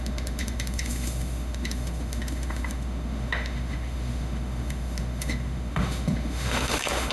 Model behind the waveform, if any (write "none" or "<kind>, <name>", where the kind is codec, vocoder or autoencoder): autoencoder, DAC-VAE